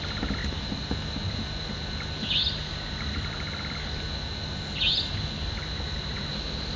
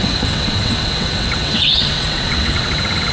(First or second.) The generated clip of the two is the second